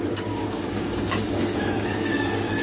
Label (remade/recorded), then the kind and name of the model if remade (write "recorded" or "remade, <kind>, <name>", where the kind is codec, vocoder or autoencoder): remade, codec, DAC